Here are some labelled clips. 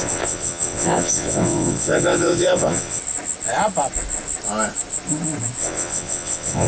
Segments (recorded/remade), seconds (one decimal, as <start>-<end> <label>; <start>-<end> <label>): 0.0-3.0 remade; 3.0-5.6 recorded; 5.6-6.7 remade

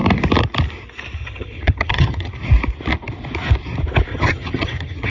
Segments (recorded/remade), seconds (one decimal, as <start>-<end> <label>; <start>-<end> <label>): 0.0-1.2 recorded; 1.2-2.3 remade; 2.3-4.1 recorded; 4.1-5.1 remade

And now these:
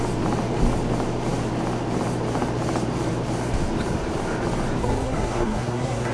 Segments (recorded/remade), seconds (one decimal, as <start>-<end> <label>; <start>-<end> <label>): 0.0-4.8 recorded; 4.8-6.1 remade

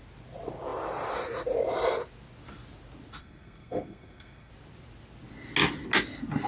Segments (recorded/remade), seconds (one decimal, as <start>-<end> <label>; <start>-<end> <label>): 0.0-3.2 recorded; 3.2-4.5 remade; 4.5-6.5 recorded

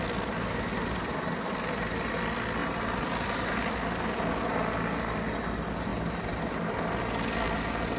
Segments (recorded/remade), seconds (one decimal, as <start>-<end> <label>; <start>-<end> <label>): 0.0-2.6 recorded; 2.6-3.7 remade; 3.7-8.0 recorded

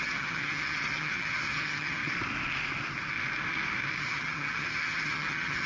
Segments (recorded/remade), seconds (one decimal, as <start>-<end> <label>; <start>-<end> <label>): 0.0-2.0 remade; 2.0-4.0 recorded; 4.0-5.7 remade

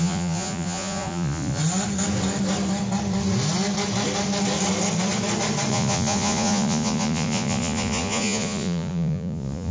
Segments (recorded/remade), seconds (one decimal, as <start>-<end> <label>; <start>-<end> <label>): 0.0-1.6 remade; 1.6-5.7 recorded; 5.7-9.7 remade